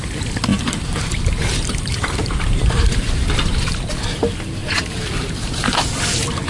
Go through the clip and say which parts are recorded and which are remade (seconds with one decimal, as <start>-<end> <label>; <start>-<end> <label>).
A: 0.0-0.5 recorded; 0.5-3.8 remade; 3.8-4.6 recorded; 4.6-5.5 remade; 5.5-6.5 recorded